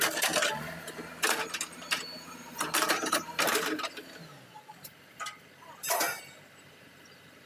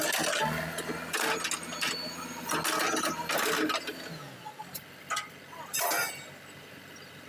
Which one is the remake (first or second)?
first